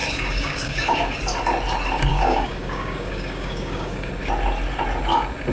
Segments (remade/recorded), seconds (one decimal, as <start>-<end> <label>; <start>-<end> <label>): 0.0-1.2 remade; 1.2-2.1 recorded; 2.1-4.1 remade; 4.1-5.5 recorded